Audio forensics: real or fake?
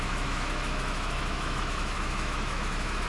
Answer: fake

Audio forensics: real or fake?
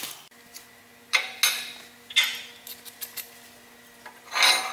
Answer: real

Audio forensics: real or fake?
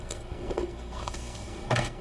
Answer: fake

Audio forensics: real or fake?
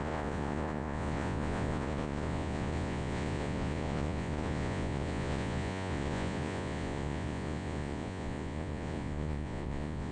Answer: fake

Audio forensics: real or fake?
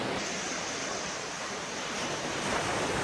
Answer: fake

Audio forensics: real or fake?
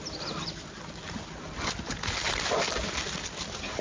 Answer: real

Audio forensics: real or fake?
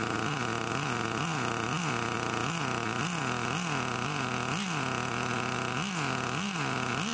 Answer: real